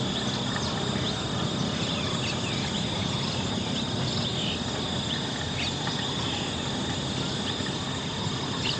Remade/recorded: recorded